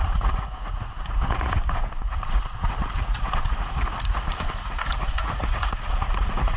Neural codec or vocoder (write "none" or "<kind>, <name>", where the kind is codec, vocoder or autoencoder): vocoder, Vocos